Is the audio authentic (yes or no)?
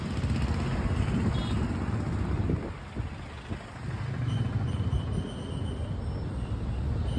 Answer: yes